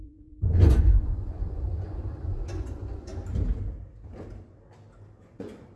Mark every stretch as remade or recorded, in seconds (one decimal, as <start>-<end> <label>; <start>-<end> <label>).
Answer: 0.0-3.1 remade; 3.1-5.2 recorded; 5.2-5.8 remade